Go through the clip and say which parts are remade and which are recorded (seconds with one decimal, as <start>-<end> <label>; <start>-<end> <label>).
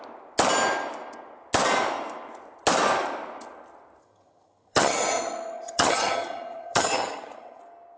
0.0-4.0 recorded; 4.0-7.6 remade; 7.6-8.0 recorded